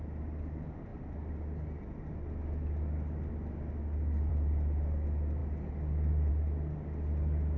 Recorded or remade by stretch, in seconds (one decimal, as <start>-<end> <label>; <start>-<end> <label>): 0.0-7.6 recorded